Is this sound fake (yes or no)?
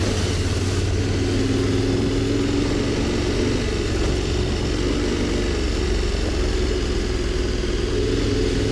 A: no